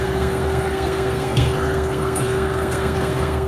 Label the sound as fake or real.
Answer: fake